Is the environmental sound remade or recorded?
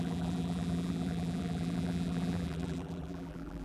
remade